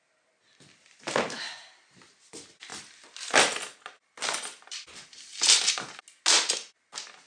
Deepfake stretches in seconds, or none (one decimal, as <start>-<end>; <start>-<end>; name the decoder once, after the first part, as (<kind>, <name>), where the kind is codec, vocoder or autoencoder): none